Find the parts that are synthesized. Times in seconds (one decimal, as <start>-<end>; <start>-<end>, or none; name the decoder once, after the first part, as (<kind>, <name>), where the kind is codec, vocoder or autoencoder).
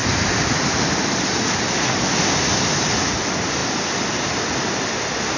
0.0-3.2 (vocoder, BigVGAN v2); 3.6-4.1